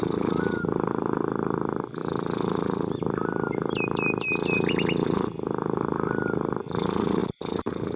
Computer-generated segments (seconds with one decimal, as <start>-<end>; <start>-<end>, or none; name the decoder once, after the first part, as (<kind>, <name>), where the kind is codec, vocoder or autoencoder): none